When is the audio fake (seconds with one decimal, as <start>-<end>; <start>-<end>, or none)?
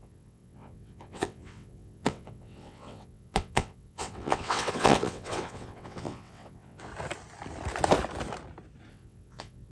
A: 0.0-6.9; 8.9-9.7